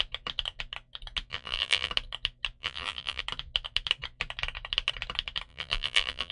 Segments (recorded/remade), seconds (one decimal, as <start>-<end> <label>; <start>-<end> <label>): 0.0-1.3 recorded; 1.3-1.9 remade; 1.9-2.6 recorded; 2.6-3.2 remade; 3.2-5.5 recorded; 5.5-6.3 remade